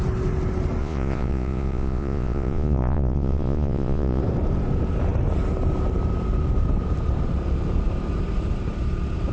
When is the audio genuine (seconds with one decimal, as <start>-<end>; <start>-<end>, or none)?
0.0-0.8; 4.2-9.3